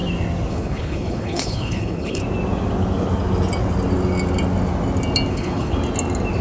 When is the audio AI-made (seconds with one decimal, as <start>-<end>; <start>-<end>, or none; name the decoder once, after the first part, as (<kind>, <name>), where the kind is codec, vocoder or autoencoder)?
0.5-2.2 (codec, HILCodec); 5.3-5.7